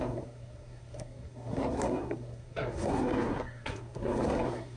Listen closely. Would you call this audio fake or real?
fake